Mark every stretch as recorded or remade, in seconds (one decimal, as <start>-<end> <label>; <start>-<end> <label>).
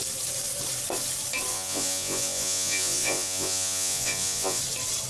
0.0-1.5 recorded; 1.5-4.6 remade; 4.6-5.1 recorded